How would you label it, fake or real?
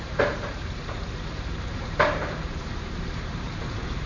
fake